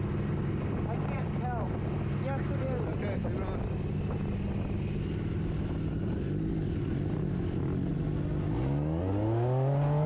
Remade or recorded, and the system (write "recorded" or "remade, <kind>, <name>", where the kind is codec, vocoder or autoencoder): recorded